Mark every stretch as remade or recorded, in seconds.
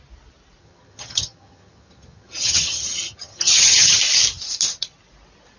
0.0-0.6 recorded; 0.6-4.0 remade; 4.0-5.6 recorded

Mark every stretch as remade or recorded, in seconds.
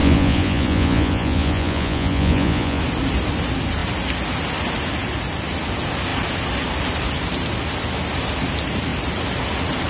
0.0-2.8 remade; 2.8-9.9 recorded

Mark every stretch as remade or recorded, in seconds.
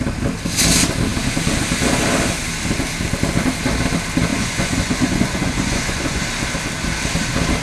0.0-4.3 recorded; 4.3-6.2 remade; 6.2-7.6 recorded